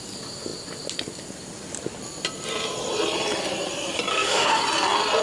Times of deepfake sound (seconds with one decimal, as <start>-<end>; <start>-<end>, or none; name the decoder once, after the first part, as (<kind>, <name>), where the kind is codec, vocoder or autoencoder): 4.1-4.6 (autoencoder, DAC-VAE)